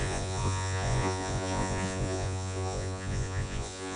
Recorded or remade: remade